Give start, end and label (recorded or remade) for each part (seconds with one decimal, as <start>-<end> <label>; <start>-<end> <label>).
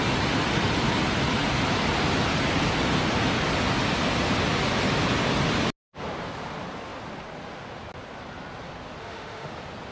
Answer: 0.0-9.0 recorded; 9.0-9.5 remade; 9.5-9.9 recorded